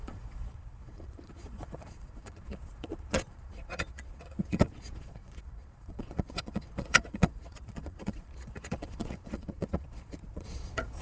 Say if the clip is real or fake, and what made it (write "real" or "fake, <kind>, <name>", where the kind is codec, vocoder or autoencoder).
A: fake, vocoder, Vocos